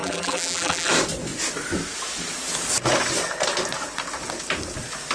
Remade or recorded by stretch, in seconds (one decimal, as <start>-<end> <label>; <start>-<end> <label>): 0.0-0.9 remade; 0.9-5.1 recorded